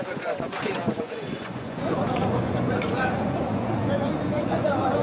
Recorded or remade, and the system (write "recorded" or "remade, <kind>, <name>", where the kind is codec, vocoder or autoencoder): remade, vocoder, Vocos